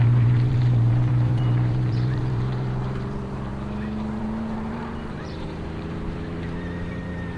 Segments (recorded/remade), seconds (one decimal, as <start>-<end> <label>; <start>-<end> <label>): 0.0-3.5 remade; 3.5-4.2 recorded; 4.2-7.4 remade